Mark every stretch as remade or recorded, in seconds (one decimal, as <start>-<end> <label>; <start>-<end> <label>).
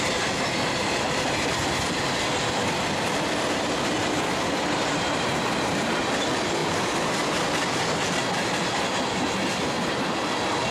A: 0.0-0.6 recorded; 0.6-2.2 remade; 2.2-4.0 recorded; 4.0-6.0 remade; 6.0-10.7 recorded